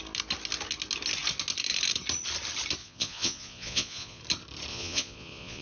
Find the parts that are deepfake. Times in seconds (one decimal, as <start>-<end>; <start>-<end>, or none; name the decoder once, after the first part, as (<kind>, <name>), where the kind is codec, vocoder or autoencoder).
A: 2.8-4.2 (vocoder, Vocos); 4.7-5.6